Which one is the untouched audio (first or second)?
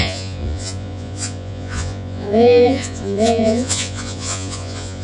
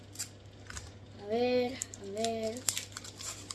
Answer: second